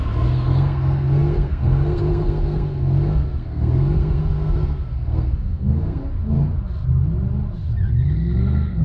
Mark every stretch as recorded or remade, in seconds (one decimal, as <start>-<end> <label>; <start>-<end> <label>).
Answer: 0.0-6.0 remade; 6.0-8.1 recorded; 8.1-8.8 remade